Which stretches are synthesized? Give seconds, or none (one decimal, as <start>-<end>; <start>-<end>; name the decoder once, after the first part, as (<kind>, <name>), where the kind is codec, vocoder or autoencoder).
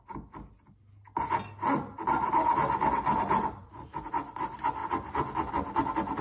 3.6-4.2 (vocoder, Vocos)